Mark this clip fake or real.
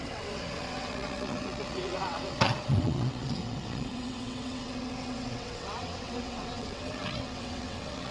fake